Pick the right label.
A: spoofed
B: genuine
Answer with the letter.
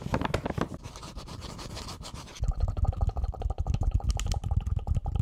B